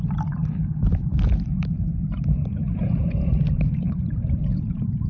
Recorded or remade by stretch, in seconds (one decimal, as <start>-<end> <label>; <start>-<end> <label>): 0.0-5.1 remade

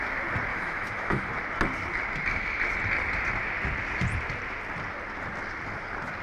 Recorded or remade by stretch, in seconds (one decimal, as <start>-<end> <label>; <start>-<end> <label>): 0.0-0.5 recorded; 0.5-1.3 remade; 1.3-6.2 recorded

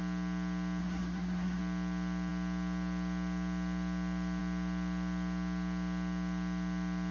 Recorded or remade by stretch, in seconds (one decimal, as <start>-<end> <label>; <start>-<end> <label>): 0.0-0.8 recorded; 0.8-1.6 remade; 1.6-7.1 recorded

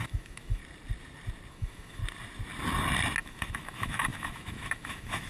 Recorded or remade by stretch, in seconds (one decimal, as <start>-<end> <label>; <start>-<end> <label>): 0.0-0.6 remade; 0.6-1.5 recorded; 1.5-2.0 remade; 2.0-3.2 recorded; 3.2-5.3 remade

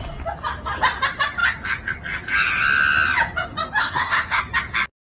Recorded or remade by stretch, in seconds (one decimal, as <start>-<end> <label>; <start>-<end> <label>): 0.0-3.8 recorded; 3.8-4.4 remade; 4.4-5.0 recorded